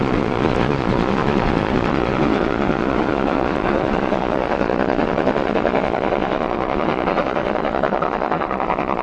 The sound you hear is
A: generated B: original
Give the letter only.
A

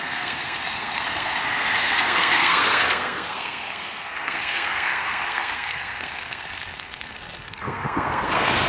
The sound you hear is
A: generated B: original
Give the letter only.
A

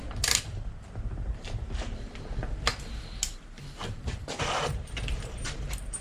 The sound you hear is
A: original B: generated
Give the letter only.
B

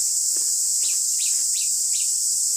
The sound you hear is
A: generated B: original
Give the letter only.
B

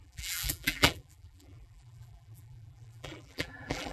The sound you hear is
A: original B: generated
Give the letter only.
B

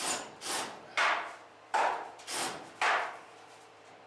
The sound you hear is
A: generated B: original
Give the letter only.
A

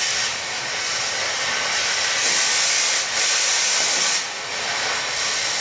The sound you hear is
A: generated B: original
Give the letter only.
B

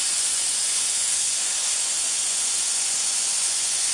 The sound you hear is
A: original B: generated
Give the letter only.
B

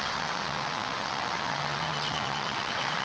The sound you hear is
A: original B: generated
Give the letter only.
B